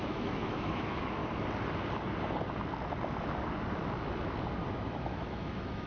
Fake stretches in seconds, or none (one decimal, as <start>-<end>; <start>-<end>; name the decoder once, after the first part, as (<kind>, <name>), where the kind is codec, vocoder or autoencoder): 0.0-1.2 (autoencoder, DAC-VAE); 4.7-5.9